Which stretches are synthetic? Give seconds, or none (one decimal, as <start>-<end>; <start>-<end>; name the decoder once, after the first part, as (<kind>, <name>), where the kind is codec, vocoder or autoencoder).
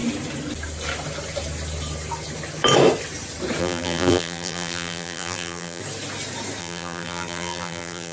3.6-5.8 (vocoder, BigVGAN v2); 6.6-8.1